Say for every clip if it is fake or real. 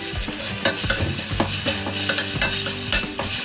real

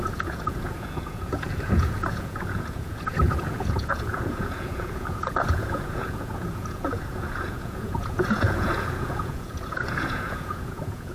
fake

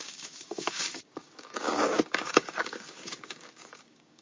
fake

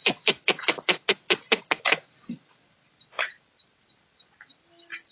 real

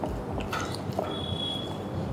fake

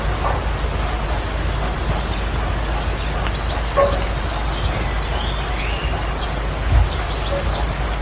real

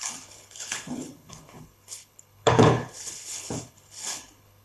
fake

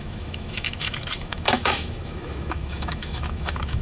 fake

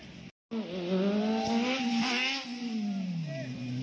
real